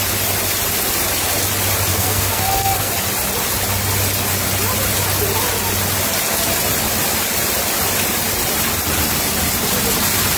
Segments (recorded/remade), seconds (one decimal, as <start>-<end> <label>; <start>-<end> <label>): 0.0-1.9 recorded; 1.9-2.9 remade; 2.9-10.4 recorded